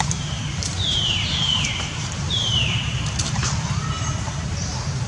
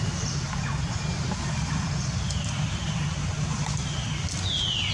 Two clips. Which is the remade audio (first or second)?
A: first